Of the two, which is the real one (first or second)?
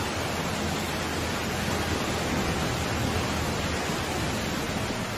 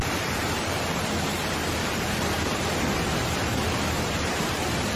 first